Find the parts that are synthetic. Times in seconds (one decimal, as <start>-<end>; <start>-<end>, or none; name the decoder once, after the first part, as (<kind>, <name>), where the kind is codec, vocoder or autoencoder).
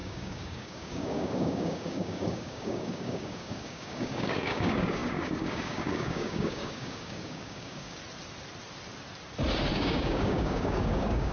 0.0-8.0 (codec, DAC); 9.7-11.3